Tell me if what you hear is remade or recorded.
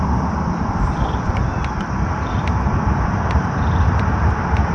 recorded